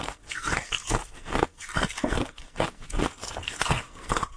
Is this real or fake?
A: fake